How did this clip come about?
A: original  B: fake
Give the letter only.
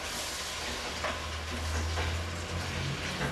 A